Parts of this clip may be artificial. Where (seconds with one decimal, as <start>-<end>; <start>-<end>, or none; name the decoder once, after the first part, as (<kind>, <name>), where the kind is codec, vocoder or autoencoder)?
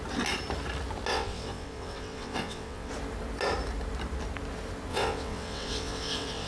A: 1.1-2.9 (vocoder, WaveNeXt); 4.9-6.5